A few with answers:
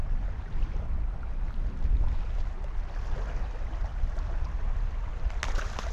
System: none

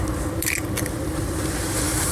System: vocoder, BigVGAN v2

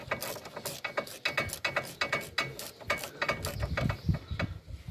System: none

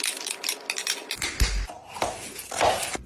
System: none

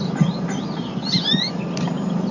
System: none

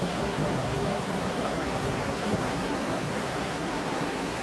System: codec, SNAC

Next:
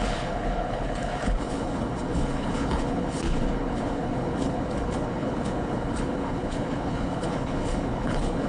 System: codec, HILCodec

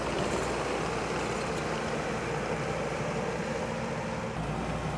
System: none